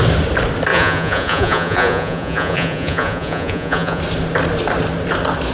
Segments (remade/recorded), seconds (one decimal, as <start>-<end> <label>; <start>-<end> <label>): 0.0-0.7 recorded; 0.7-4.0 remade; 4.0-5.5 recorded